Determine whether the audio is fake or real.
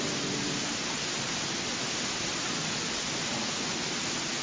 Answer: real